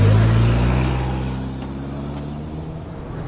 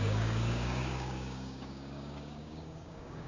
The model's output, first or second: second